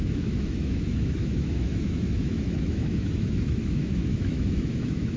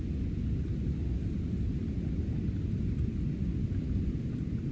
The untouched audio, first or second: second